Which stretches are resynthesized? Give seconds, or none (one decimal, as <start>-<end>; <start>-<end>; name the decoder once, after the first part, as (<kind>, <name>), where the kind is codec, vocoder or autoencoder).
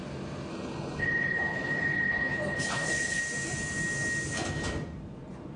0.5-3.2 (codec, HILCodec)